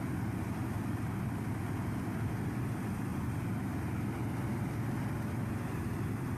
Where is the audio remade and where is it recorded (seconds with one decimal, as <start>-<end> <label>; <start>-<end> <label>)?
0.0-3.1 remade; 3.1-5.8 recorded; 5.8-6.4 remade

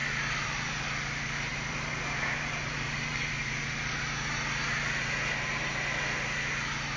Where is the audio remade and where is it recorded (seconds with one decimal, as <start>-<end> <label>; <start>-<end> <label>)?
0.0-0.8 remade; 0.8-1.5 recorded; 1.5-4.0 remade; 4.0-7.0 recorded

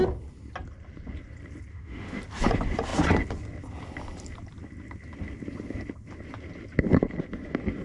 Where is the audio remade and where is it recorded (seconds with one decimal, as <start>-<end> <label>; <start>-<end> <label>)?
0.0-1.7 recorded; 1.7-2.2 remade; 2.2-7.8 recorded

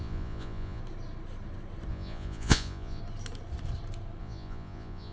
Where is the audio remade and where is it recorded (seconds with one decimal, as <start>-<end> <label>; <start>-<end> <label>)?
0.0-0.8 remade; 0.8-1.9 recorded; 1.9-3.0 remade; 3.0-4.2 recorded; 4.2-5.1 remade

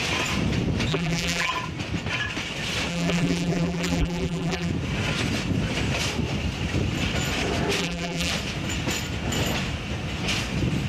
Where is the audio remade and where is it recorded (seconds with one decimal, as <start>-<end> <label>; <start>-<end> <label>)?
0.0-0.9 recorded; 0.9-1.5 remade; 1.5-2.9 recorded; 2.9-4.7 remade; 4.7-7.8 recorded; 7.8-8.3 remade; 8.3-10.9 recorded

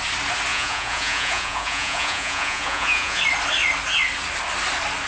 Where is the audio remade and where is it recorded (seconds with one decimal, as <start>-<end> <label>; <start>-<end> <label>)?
0.0-0.5 recorded; 0.5-3.2 remade; 3.2-5.1 recorded